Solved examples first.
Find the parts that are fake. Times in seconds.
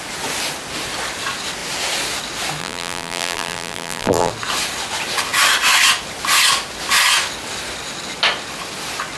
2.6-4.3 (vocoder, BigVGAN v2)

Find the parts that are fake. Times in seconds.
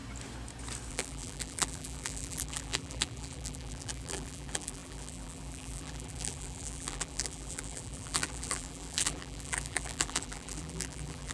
0.9-11.3 (vocoder, BigVGAN v2)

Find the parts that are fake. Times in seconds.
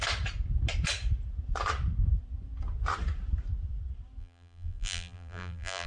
4.2-5.9 (vocoder, BigVGAN v2)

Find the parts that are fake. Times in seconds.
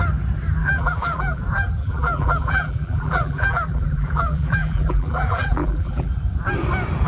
0.6-1.4 (vocoder, BigVGAN v2); 1.8-6.1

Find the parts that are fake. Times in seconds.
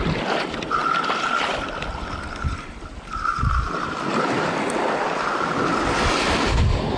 none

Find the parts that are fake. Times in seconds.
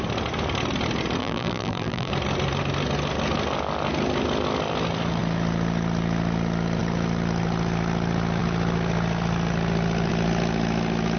1.2-2.1 (vocoder, BigVGAN v2)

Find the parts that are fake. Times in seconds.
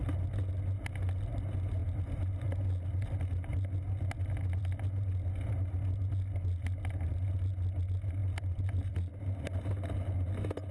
8.2-8.9 (vocoder, BigVGAN v2)